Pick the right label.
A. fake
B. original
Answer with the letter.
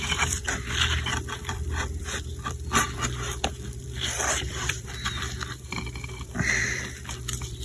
A